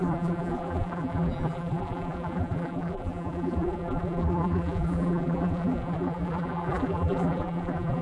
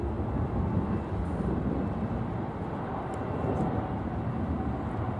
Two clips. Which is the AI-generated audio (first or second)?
first